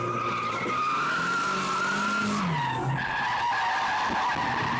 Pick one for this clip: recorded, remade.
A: recorded